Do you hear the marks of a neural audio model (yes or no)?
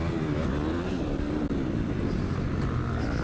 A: no